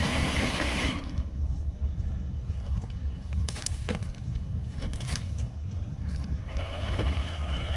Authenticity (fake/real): fake